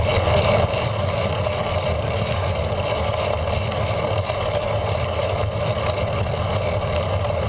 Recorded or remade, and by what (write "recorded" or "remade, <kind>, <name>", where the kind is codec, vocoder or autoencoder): recorded